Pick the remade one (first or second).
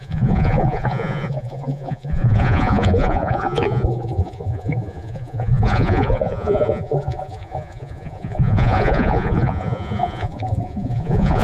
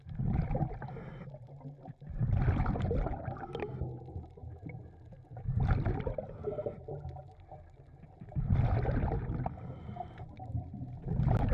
first